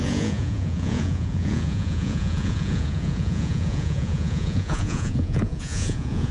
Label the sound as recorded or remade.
remade